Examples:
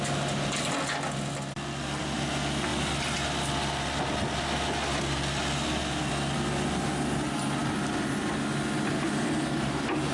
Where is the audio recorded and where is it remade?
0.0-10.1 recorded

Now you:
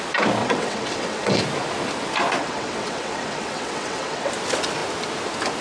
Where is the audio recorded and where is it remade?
0.0-0.4 recorded; 0.4-1.4 remade; 1.4-2.4 recorded; 2.4-4.3 remade; 4.3-5.6 recorded

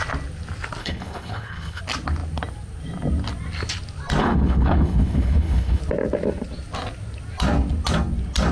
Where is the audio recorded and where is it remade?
0.0-0.8 recorded; 0.8-1.8 remade; 1.8-4.2 recorded; 4.2-5.8 remade; 5.8-8.5 recorded

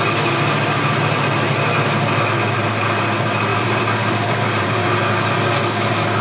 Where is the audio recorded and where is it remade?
0.0-3.5 recorded; 3.5-4.9 remade; 4.9-6.2 recorded

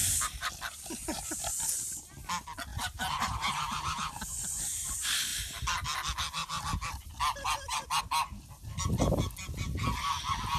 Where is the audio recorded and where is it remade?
0.0-0.5 remade; 0.5-2.7 recorded; 2.7-4.3 remade; 4.3-10.6 recorded

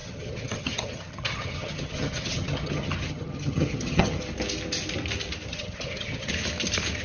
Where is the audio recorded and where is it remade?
0.0-4.2 remade; 4.2-5.5 recorded; 5.5-6.3 remade; 6.3-7.0 recorded

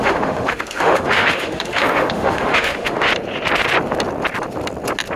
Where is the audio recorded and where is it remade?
0.0-3.1 remade; 3.1-5.2 recorded

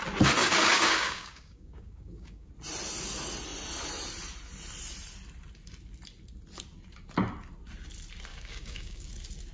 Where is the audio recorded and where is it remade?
0.0-0.4 recorded; 0.4-2.5 remade; 2.5-8.3 recorded; 8.3-9.1 remade; 9.1-9.5 recorded